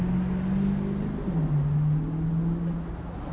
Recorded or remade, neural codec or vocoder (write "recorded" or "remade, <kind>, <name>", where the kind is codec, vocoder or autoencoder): recorded